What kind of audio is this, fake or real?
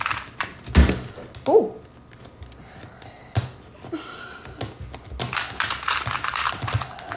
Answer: real